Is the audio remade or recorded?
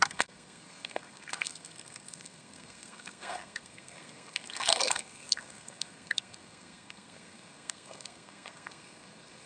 remade